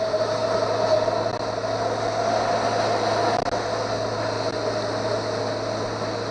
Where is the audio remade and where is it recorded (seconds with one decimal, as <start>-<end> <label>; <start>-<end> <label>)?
0.0-6.3 recorded